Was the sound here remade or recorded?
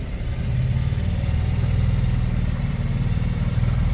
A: remade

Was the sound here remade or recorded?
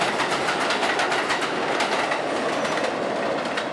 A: recorded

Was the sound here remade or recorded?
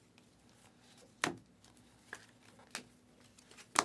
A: recorded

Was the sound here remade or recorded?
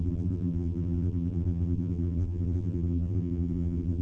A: remade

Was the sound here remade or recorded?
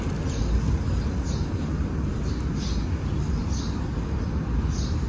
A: recorded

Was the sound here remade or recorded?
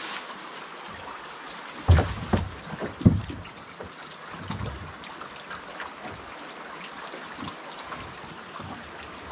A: recorded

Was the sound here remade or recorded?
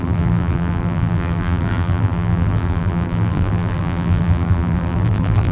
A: remade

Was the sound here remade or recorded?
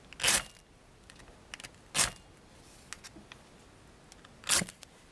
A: recorded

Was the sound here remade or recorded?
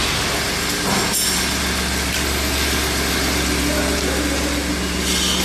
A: recorded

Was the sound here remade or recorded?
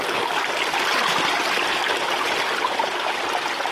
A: recorded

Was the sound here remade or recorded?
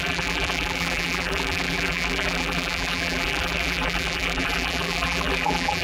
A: remade